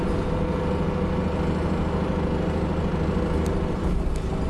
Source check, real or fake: real